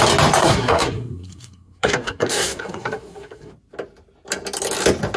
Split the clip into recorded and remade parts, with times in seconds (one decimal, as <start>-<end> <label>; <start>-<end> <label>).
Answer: 0.0-0.4 recorded; 0.4-3.5 remade; 3.5-5.2 recorded